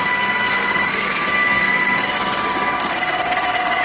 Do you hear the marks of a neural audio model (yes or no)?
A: yes